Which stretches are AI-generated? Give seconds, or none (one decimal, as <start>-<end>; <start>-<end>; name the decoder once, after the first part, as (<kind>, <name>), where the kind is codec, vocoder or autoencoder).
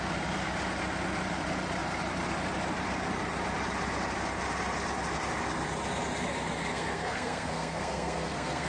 6.7-8.7 (codec, SNAC)